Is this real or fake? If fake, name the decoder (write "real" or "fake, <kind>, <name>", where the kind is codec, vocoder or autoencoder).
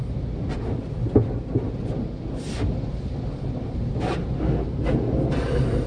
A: real